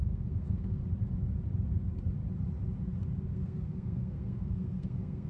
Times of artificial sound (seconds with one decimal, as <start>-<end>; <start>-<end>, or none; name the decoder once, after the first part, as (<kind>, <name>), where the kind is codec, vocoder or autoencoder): 0.0-0.8 (codec, SNAC); 3.2-5.3